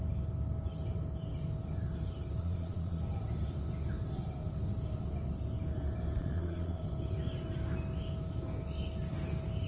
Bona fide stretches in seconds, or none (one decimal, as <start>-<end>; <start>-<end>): 0.0-2.4; 3.0-6.2; 6.9-9.7